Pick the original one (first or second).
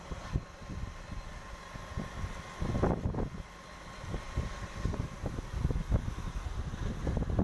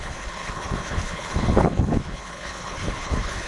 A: first